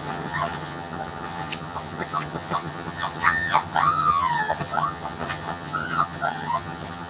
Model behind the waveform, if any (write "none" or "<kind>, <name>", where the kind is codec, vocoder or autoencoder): vocoder, HiFi-GAN